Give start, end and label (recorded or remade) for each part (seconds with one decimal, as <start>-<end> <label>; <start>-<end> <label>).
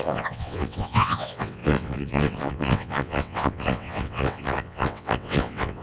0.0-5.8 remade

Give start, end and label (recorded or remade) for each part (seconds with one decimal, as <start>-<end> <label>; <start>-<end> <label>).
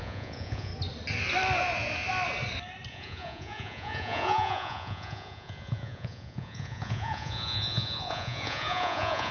0.0-0.7 remade; 0.7-2.9 recorded; 2.9-9.3 remade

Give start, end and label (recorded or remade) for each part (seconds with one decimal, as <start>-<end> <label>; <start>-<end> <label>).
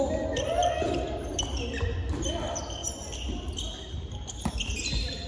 0.0-5.3 recorded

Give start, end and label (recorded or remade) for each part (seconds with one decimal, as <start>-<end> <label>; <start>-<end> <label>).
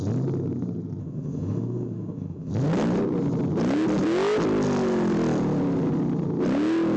0.0-1.0 recorded; 1.0-2.5 remade; 2.5-7.0 recorded